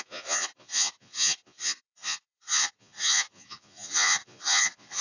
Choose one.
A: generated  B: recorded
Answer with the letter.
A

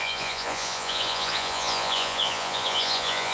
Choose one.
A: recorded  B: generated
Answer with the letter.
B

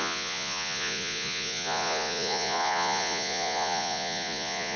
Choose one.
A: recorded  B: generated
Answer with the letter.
B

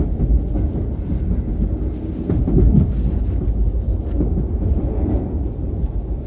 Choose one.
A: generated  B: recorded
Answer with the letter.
B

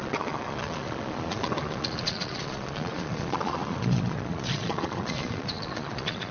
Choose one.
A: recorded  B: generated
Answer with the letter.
B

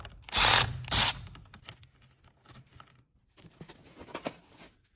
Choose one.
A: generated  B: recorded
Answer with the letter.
B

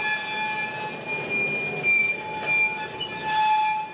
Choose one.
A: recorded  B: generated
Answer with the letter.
A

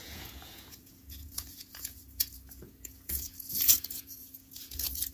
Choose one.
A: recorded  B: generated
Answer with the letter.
B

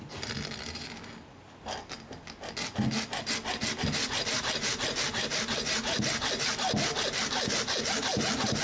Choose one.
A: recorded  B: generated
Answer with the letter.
A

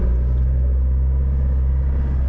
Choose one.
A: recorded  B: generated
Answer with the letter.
A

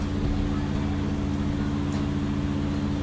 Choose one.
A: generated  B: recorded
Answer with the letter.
B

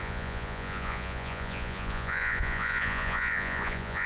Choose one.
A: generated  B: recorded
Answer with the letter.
A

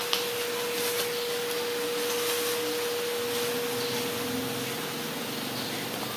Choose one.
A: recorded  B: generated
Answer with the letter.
A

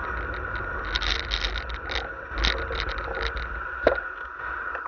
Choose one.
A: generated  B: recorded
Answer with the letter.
B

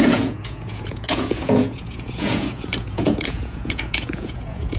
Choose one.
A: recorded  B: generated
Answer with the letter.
B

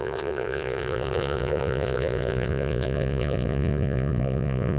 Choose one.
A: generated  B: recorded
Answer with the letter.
A